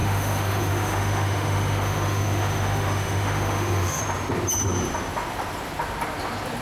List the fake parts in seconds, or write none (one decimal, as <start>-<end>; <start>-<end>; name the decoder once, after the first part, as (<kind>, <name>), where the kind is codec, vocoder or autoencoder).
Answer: 0.0-4.0 (autoencoder, DAC-VAE)